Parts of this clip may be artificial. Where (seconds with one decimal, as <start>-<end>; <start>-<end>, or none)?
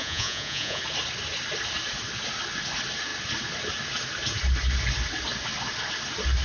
0.0-0.8